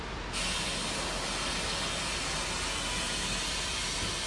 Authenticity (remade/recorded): recorded